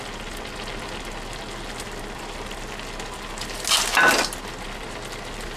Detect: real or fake real